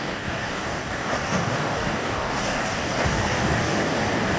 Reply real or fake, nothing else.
fake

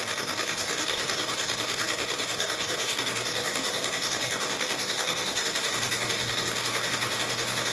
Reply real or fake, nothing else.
fake